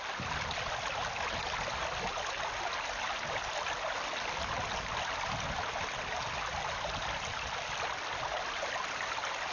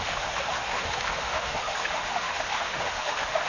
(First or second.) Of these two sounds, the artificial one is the second